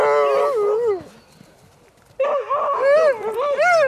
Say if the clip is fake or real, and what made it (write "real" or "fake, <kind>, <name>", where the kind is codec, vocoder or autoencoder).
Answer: real